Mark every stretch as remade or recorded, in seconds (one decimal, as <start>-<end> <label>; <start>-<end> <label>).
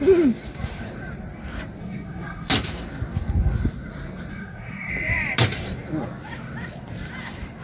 0.0-1.8 recorded; 1.8-2.5 remade; 2.5-4.3 recorded; 4.3-4.9 remade; 4.9-7.6 recorded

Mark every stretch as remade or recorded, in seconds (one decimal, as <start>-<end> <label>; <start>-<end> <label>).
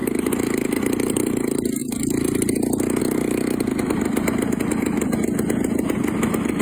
0.0-6.6 recorded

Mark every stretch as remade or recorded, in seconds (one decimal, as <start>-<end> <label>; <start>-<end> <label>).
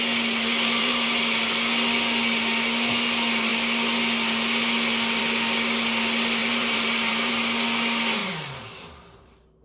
0.0-0.5 recorded; 0.5-1.2 remade; 1.2-6.4 recorded; 6.4-7.3 remade; 7.3-8.2 recorded; 8.2-9.2 remade; 9.2-9.6 recorded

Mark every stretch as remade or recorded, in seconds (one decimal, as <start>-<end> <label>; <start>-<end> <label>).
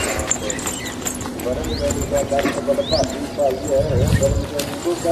0.0-5.1 recorded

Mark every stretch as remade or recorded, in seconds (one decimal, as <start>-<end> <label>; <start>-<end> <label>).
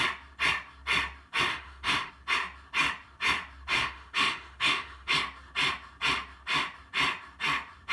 0.0-1.5 recorded; 1.5-2.1 remade; 2.1-3.7 recorded; 3.7-5.1 remade; 5.1-7.9 recorded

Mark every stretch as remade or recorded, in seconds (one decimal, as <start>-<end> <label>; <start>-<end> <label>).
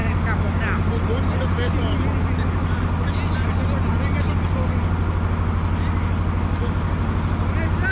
0.0-7.9 recorded